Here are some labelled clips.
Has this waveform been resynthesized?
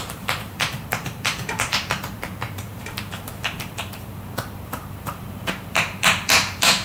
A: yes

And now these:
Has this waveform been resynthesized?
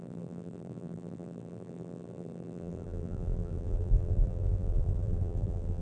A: yes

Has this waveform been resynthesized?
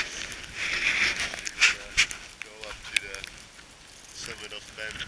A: no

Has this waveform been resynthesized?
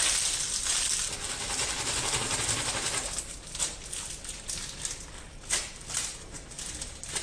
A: no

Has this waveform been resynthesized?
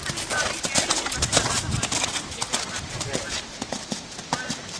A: no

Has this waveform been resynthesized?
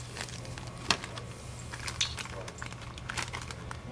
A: no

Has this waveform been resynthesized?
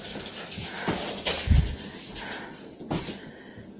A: no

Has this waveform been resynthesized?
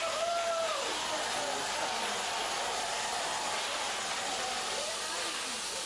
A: no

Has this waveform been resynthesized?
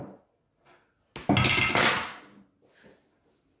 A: no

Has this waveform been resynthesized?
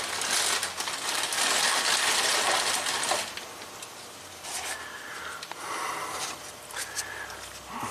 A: no